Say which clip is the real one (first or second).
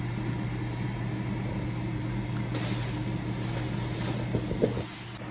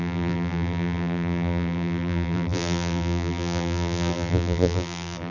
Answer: first